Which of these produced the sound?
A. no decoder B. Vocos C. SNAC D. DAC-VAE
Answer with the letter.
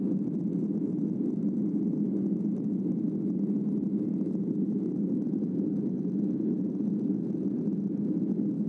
A